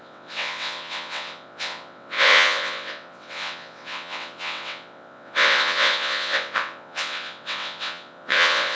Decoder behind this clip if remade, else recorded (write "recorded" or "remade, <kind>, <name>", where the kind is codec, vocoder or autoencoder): remade, vocoder, WaveNeXt